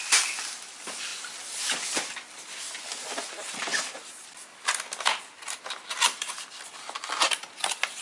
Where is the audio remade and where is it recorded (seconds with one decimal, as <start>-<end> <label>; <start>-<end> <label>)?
0.0-8.0 recorded